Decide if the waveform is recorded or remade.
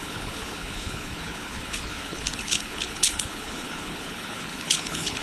remade